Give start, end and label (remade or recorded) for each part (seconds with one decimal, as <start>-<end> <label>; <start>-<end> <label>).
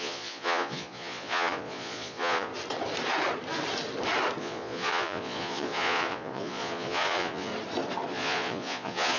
0.0-2.5 remade; 2.5-4.4 recorded; 4.4-7.5 remade; 7.5-8.1 recorded; 8.1-9.2 remade